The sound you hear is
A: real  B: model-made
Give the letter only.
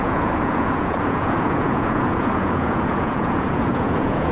B